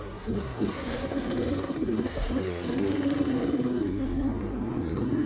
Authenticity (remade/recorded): remade